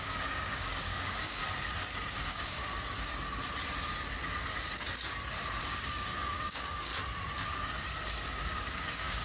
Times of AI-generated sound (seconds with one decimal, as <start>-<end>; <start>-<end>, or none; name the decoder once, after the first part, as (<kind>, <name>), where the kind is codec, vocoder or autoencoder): 0.0-1.4 (codec, DAC); 2.1-2.6; 5.6-6.9; 8.4-9.2